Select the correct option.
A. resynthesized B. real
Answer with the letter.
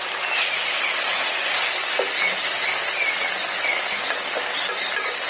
B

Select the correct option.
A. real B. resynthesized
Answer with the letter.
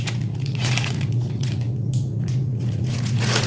B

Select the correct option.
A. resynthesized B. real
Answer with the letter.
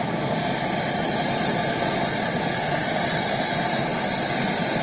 B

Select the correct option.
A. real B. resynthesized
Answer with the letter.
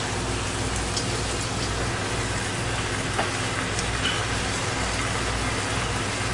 A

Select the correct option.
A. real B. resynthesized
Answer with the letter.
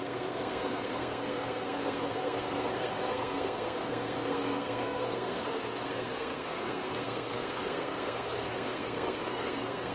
B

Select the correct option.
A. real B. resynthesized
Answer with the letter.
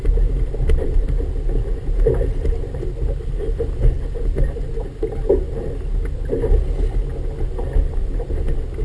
A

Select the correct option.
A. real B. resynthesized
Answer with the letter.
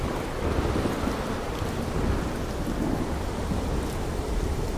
A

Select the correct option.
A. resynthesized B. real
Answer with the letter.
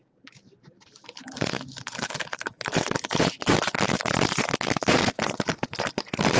A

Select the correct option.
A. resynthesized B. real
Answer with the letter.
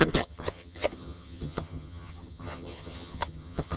A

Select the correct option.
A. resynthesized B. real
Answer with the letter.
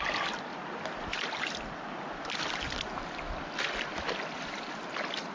B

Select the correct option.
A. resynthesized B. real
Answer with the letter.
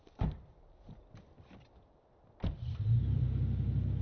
B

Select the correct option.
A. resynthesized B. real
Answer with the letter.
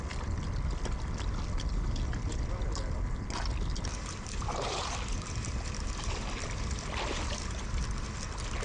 B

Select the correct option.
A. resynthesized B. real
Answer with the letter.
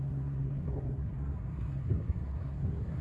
A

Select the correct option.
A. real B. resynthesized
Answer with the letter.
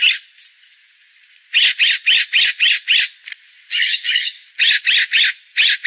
A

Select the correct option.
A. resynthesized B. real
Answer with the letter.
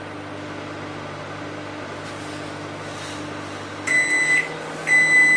B